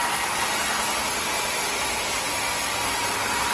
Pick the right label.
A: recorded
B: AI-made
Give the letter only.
A